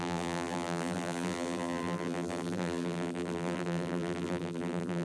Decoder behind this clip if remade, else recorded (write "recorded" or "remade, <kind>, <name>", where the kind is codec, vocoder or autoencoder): remade, vocoder, BigVGAN v2